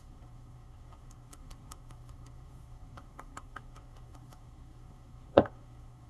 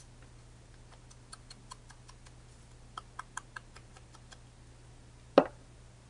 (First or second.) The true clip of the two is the second